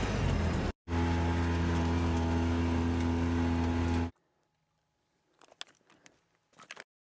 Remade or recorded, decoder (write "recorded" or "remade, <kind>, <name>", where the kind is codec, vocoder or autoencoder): recorded